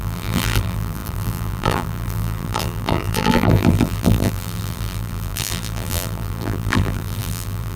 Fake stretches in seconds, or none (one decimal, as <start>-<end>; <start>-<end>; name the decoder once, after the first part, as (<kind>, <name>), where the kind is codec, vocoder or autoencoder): 0.0-7.8 (vocoder, BigVGAN v2)